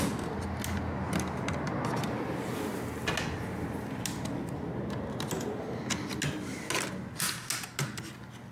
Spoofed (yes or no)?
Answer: no